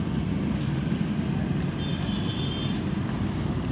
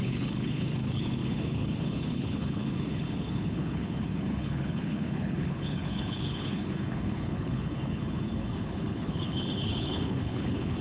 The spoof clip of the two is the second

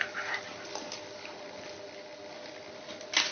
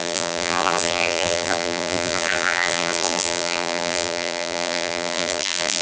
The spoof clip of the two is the second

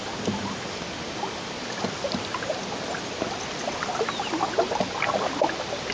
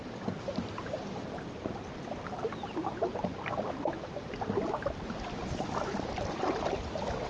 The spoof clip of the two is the second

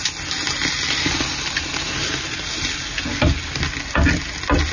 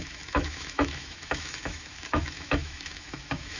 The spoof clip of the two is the second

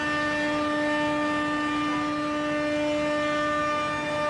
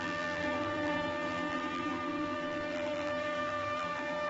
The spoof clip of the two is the second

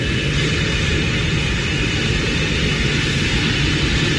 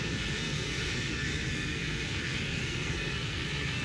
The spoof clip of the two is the second